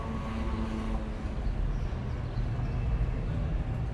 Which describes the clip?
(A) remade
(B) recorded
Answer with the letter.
B